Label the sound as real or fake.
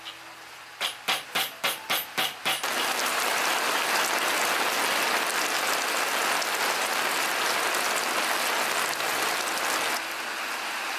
real